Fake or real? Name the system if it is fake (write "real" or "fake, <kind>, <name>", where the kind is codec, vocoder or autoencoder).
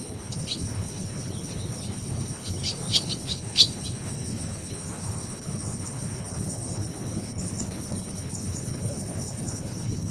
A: fake, codec, HILCodec